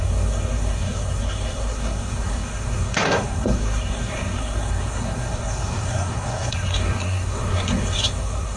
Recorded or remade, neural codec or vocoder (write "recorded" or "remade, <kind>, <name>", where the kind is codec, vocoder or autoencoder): remade, codec, SNAC